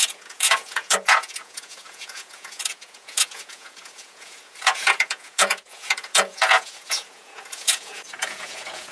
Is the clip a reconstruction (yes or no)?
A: yes